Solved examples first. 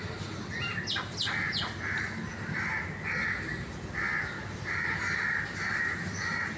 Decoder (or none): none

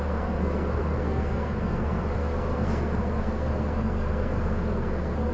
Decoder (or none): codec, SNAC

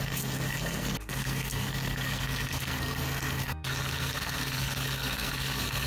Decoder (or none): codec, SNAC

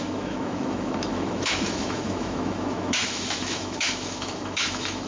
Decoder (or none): autoencoder, DAC-VAE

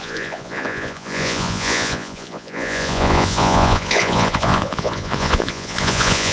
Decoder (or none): vocoder, Vocos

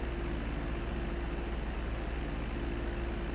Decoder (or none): none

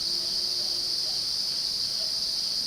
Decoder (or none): none